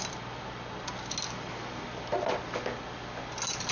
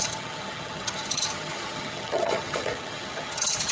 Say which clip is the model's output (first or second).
second